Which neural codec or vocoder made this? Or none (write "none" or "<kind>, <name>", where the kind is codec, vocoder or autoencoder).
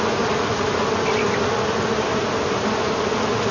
none